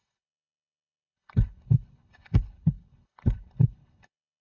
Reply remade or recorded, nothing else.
remade